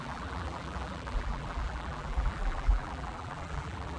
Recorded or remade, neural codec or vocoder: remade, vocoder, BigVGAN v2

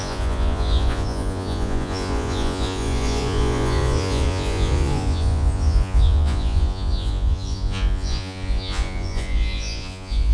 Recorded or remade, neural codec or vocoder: remade, vocoder, Vocos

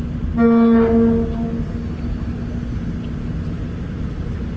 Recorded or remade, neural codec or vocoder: recorded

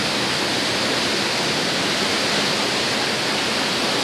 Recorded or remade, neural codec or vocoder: recorded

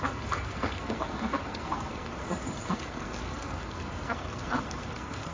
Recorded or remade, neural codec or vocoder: remade, codec, SNAC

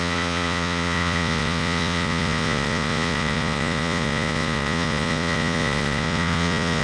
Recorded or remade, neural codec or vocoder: remade, vocoder, Vocos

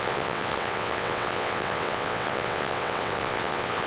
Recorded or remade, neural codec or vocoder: remade, vocoder, WaveNeXt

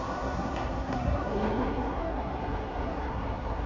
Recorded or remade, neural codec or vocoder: remade, codec, SNAC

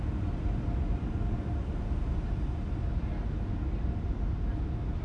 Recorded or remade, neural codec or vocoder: recorded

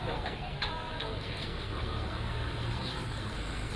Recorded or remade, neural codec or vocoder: remade, codec, SNAC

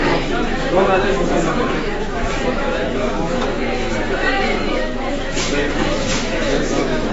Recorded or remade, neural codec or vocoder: remade, autoencoder, DAC-VAE